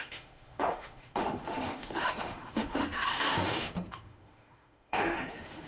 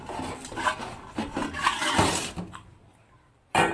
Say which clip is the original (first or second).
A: second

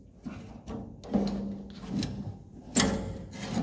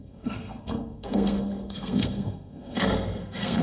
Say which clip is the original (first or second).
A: first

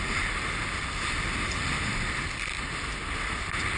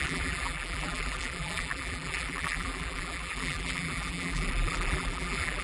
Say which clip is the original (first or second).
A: first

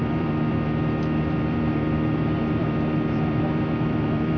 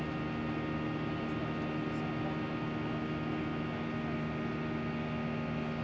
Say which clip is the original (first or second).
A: second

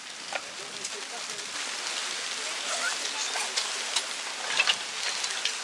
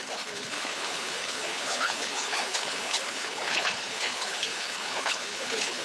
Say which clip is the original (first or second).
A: first